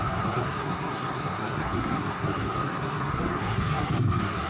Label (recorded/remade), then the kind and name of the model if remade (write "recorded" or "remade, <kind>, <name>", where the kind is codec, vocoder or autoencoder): remade, codec, SNAC